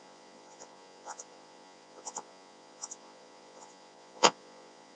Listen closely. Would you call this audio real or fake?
fake